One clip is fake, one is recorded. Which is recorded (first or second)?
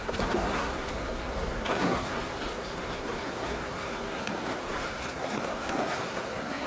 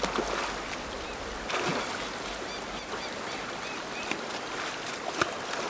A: second